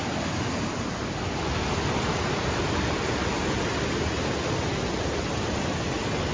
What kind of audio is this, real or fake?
real